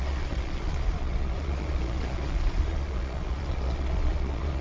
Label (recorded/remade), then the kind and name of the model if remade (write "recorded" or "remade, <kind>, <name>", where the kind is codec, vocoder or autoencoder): remade, vocoder, Vocos